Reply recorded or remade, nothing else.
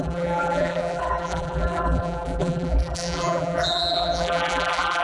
remade